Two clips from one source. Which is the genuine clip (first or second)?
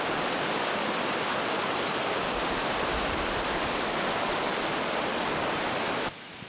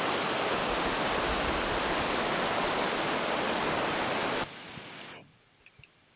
second